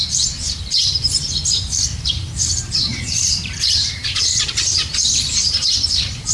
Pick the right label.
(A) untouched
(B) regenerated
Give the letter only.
B